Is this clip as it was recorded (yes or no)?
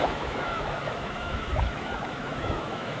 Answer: no